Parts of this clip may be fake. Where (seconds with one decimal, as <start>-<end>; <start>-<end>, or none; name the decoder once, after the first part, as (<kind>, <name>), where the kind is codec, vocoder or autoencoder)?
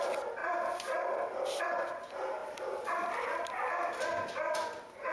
0.4-1.6 (vocoder, BigVGAN v2); 2.4-4.2